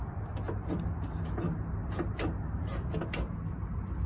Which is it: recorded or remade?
recorded